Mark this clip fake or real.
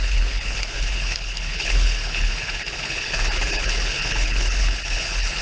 fake